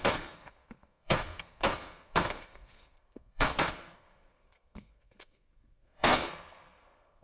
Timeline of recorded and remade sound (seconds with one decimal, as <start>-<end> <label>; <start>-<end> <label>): 0.0-7.2 remade